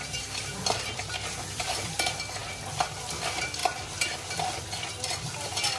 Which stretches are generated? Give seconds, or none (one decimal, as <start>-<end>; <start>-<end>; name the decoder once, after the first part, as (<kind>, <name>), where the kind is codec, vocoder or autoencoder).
none